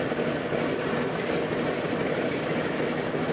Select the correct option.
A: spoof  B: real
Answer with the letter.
B